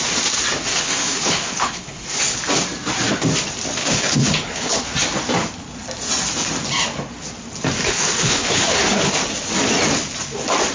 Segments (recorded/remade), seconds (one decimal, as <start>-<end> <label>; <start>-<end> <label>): 0.0-0.7 recorded; 0.7-2.2 remade; 2.2-3.8 recorded; 3.8-4.8 remade; 4.8-7.8 recorded; 7.8-9.1 remade; 9.1-10.7 recorded